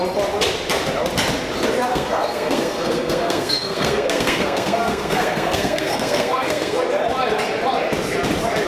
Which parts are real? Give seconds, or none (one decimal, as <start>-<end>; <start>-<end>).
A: 0.0-1.9; 6.8-8.7